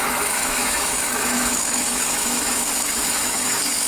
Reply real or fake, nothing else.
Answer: fake